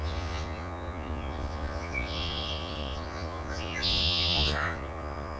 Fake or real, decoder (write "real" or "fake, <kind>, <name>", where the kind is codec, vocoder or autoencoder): fake, vocoder, Vocos